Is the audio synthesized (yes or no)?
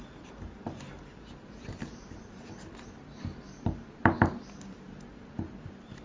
yes